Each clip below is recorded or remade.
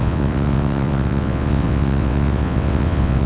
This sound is remade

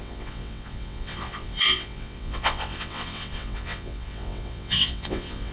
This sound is remade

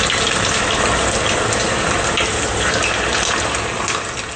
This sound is recorded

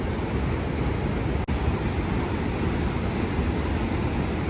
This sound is recorded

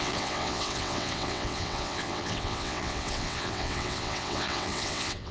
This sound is remade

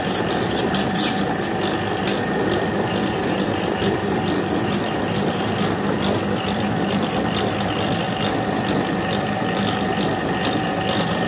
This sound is recorded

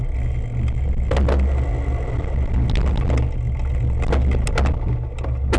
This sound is recorded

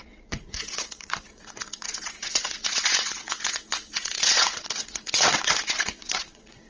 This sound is remade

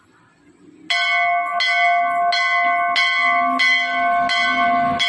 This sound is recorded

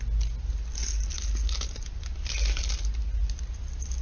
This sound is recorded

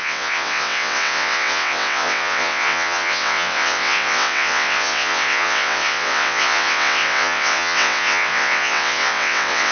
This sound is remade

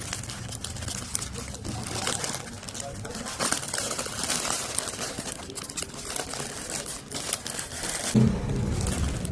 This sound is recorded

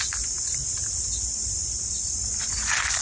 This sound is recorded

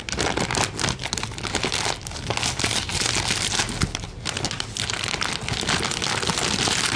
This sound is recorded